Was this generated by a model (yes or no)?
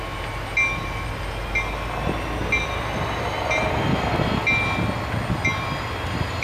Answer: no